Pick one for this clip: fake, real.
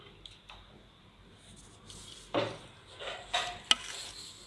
real